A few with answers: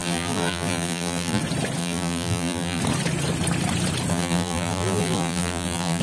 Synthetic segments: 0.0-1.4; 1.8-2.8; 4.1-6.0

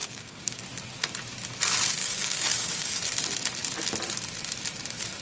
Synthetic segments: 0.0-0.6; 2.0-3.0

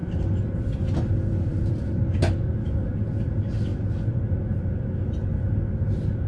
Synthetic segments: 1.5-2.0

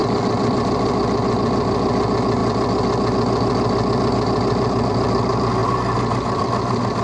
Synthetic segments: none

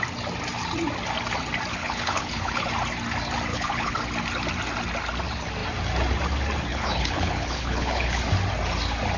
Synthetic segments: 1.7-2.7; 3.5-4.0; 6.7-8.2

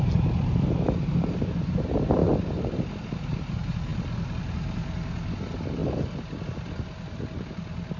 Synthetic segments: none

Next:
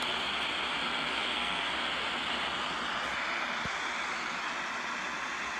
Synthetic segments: 1.1-1.7